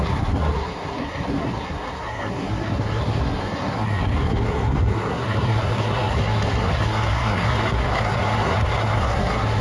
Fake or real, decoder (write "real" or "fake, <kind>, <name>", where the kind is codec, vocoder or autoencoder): fake, codec, SNAC